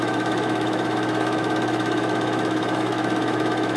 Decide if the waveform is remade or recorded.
remade